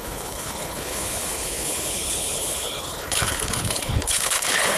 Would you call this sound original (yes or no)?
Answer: no